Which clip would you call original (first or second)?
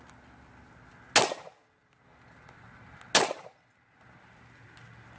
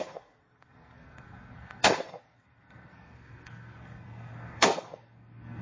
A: first